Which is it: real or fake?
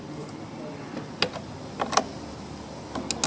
real